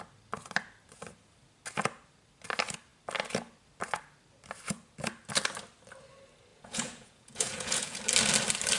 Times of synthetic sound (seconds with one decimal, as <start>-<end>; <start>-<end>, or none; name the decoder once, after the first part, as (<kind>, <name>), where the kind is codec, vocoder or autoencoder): 6.5-8.0 (vocoder, Vocos)

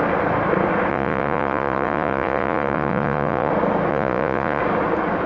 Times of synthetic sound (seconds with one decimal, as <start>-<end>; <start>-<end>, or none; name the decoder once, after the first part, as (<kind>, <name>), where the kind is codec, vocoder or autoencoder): 0.9-3.5 (vocoder, Vocos); 3.9-4.6

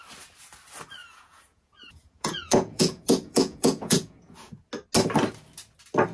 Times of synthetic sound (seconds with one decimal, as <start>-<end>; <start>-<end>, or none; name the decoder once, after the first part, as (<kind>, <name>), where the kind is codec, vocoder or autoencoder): 1.0-4.7 (vocoder, Vocos)

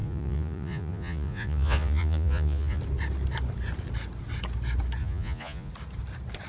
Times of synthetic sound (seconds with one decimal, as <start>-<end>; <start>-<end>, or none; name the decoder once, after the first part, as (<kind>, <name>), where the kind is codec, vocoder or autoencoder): 0.0-2.8 (vocoder, Vocos); 5.0-5.7

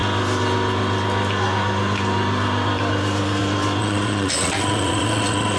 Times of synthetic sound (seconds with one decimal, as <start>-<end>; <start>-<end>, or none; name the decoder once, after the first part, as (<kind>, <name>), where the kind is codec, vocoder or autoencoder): 3.8-5.6 (vocoder, Vocos)

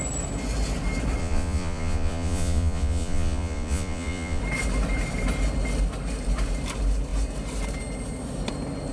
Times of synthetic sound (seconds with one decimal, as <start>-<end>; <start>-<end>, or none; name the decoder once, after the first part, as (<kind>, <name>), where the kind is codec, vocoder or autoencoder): 1.2-4.4 (vocoder, Vocos)

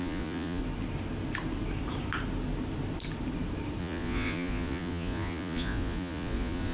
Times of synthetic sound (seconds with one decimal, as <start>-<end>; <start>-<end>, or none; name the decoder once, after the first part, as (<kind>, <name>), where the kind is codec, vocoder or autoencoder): 0.0-0.6 (vocoder, Vocos); 3.8-6.7

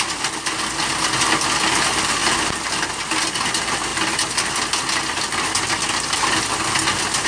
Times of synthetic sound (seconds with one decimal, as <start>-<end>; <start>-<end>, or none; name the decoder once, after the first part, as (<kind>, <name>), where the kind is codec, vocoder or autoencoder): none